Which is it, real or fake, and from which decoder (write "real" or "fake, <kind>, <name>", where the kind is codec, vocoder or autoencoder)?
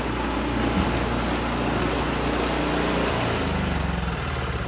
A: real